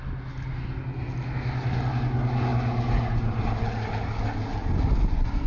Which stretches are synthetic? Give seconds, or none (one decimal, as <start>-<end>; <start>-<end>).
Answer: none